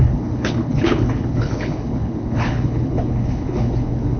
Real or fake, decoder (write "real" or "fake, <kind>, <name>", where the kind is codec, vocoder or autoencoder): fake, codec, HILCodec